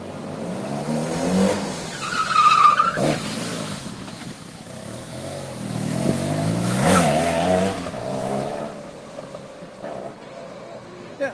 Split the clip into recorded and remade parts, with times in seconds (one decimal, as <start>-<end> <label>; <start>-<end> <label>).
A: 0.0-3.5 recorded; 3.5-7.6 remade; 7.6-8.1 recorded; 8.1-8.6 remade; 8.6-11.3 recorded